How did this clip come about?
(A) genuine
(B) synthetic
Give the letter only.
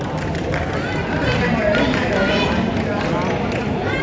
A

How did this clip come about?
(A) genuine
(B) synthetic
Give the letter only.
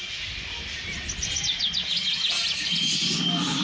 A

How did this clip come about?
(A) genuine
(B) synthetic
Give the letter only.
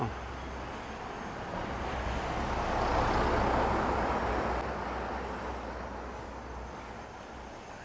A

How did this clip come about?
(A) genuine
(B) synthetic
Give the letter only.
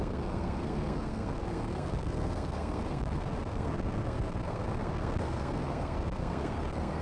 B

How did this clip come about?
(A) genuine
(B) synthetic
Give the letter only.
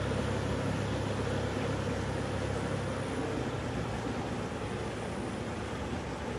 A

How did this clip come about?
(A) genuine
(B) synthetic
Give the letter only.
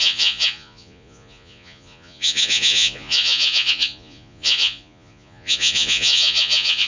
B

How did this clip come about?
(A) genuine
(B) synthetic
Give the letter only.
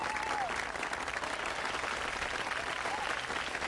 A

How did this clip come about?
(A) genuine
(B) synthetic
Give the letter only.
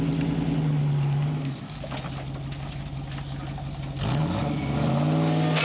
A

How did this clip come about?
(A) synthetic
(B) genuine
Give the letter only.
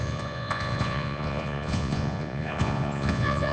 A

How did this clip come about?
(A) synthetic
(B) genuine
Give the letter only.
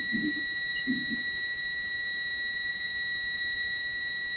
B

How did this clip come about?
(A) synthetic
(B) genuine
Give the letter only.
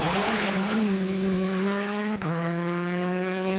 A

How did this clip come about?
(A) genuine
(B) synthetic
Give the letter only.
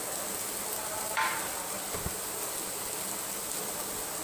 A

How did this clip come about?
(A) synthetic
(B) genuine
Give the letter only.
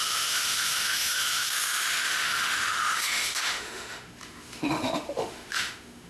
A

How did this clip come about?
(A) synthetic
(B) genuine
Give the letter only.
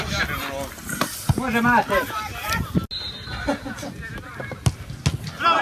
B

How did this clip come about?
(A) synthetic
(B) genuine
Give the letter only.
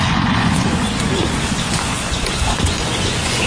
A